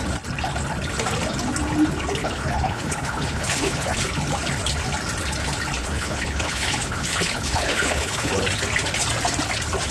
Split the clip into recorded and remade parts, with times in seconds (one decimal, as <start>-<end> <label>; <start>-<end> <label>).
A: 0.0-2.2 recorded; 2.2-4.0 remade; 4.0-5.8 recorded; 5.8-8.3 remade; 8.3-9.9 recorded